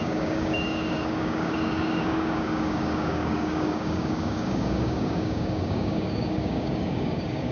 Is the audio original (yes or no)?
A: no